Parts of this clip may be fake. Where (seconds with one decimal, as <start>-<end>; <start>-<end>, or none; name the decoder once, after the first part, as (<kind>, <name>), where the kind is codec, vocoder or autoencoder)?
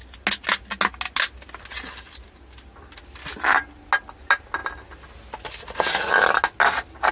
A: none